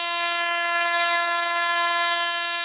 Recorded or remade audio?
remade